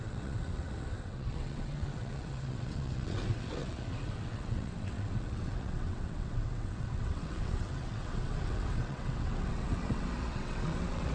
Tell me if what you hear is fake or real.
fake